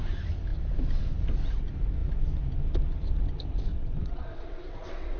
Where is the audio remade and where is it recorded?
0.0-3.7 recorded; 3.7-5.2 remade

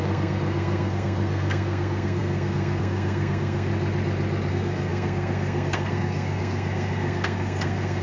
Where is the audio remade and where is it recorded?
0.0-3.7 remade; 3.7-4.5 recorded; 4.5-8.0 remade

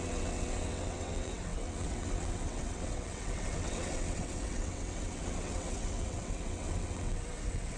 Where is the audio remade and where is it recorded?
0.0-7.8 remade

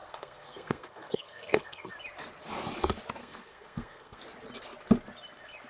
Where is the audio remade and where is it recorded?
0.0-1.9 remade; 1.9-3.2 recorded; 3.2-4.2 remade; 4.2-5.7 recorded